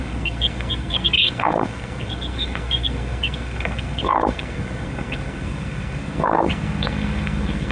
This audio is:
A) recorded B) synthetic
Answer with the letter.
B